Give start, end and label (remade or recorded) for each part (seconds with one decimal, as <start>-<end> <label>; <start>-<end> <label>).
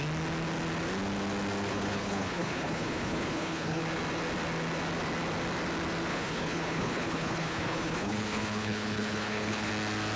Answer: 0.0-1.7 recorded; 1.7-3.8 remade; 3.8-6.1 recorded; 6.1-9.7 remade; 9.7-10.2 recorded